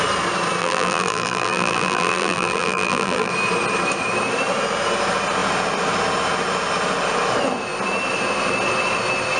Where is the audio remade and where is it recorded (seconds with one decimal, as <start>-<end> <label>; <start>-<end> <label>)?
0.0-0.6 recorded; 0.6-3.3 remade; 3.3-9.4 recorded